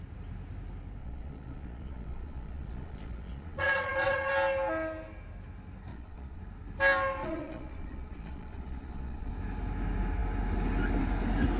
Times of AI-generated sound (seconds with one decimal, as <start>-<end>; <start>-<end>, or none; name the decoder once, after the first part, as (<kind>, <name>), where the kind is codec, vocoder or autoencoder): 1.0-4.3 (vocoder, Vocos); 5.9-6.4; 7.2-9.3